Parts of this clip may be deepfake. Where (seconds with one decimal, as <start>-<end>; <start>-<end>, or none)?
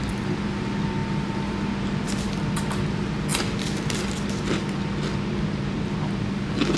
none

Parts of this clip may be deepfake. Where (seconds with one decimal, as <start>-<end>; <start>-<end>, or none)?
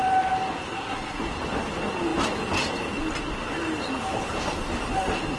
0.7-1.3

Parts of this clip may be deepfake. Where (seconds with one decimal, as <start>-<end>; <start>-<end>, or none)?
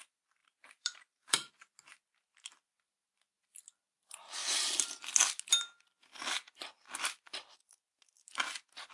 0.4-1.5; 4.4-5.0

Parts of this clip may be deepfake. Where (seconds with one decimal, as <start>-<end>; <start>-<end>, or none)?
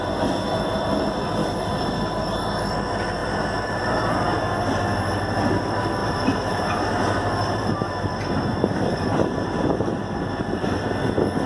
1.4-1.9; 3.2-4.2; 6.0-10.3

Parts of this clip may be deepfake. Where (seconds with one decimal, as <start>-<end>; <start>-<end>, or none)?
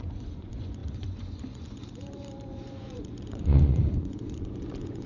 0.0-5.1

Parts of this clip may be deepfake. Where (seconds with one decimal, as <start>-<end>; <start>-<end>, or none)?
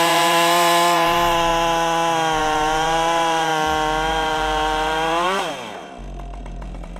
0.0-1.5; 2.4-3.5; 4.1-5.7; 6.4-7.0